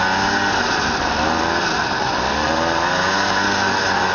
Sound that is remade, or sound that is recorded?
recorded